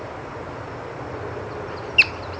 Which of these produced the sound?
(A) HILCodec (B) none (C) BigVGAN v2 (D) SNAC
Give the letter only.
B